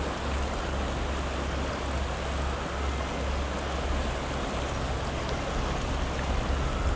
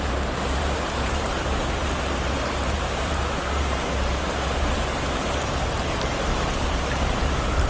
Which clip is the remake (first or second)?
second